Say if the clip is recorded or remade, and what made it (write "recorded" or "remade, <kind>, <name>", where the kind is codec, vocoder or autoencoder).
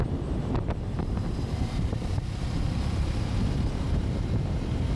remade, vocoder, BigVGAN v2